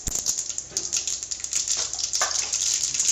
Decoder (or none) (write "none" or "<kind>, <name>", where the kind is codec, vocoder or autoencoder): none